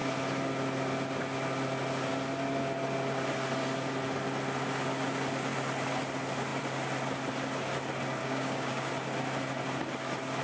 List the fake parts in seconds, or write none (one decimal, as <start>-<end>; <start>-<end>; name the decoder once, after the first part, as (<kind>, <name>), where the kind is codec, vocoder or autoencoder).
8.2-8.9 (codec, DAC)